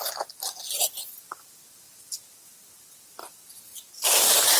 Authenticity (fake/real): real